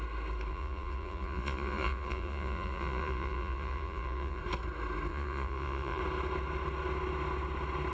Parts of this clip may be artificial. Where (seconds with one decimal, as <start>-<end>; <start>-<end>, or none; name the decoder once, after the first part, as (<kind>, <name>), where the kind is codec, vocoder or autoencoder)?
0.5-4.4 (vocoder, Vocos); 5.1-6.0